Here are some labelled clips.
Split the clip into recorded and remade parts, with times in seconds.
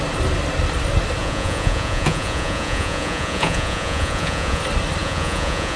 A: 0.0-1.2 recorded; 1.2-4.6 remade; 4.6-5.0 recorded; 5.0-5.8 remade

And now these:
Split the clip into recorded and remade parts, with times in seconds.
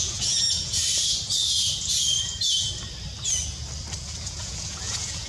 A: 0.0-0.8 remade; 0.8-4.0 recorded; 4.0-5.3 remade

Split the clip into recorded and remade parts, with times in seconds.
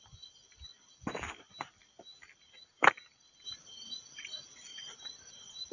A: 0.0-5.7 recorded